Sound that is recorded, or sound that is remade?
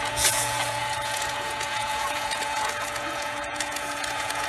remade